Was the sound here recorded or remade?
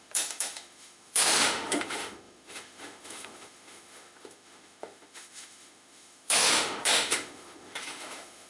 remade